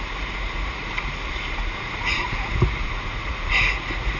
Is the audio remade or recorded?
remade